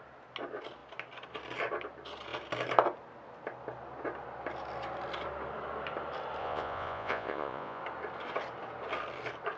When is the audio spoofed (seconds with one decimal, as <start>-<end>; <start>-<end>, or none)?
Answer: 6.4-7.8